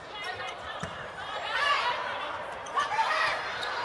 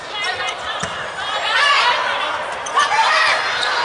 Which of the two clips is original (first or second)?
second